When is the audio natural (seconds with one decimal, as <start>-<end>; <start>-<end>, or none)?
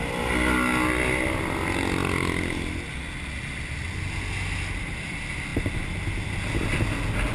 0.0-7.3